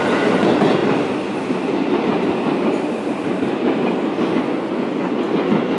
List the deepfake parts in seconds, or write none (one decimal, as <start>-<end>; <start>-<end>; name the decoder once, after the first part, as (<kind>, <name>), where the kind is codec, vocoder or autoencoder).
0.0-0.8 (vocoder, Vocos); 4.3-5.8